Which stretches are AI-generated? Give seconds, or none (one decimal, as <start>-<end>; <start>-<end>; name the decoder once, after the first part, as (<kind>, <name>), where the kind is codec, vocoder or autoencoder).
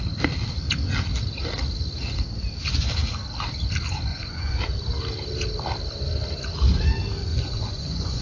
4.1-4.6 (vocoder, Vocos); 7.3-8.2